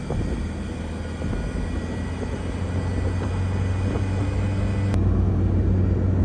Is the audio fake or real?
real